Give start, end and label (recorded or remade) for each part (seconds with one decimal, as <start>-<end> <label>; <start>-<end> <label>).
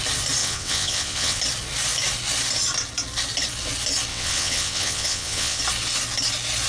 0.0-0.4 recorded; 0.4-1.4 remade; 1.4-4.1 recorded; 4.1-5.6 remade; 5.6-6.7 recorded